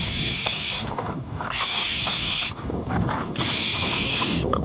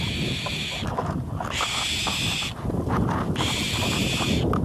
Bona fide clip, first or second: second